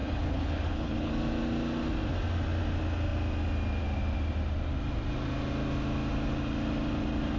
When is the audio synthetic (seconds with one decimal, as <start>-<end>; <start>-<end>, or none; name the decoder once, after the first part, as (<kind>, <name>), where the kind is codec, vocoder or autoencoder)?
0.0-1.1 (codec, HILCodec)